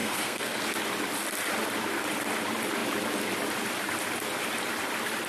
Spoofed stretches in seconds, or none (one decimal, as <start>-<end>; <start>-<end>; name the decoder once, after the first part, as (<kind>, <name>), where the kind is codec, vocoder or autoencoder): 0.0-0.6 (codec, SNAC)